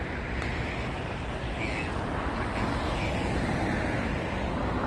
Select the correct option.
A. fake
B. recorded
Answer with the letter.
B